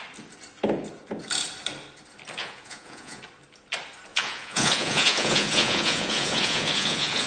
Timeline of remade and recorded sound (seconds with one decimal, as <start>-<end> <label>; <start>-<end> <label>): 0.0-2.4 recorded; 2.4-3.2 remade; 3.2-4.1 recorded; 4.1-7.3 remade